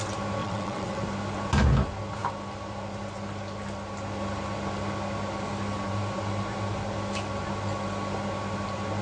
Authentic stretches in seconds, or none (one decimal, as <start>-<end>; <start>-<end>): 0.0-0.4; 1.0-9.0